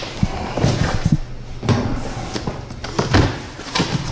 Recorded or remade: recorded